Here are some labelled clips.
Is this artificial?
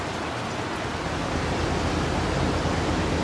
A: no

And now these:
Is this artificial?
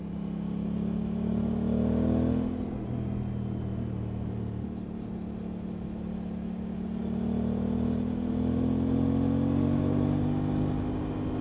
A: no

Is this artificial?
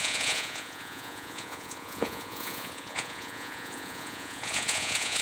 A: yes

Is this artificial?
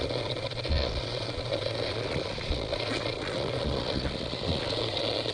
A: yes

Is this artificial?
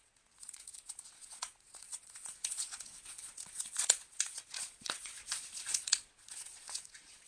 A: yes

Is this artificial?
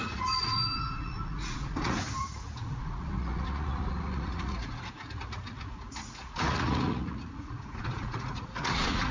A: yes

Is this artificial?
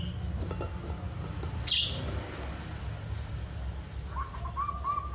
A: no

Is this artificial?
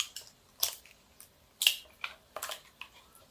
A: no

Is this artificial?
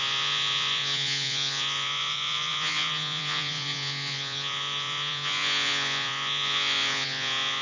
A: yes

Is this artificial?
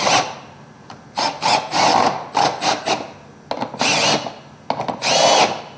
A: no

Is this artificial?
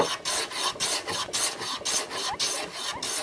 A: no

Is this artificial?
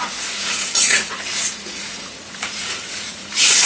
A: yes